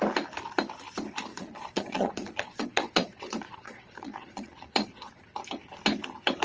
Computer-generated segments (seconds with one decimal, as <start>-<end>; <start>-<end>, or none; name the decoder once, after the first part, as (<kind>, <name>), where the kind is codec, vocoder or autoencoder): 1.3-5.1 (vocoder, Vocos)